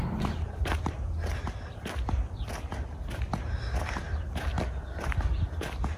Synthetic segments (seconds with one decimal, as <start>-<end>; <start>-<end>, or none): none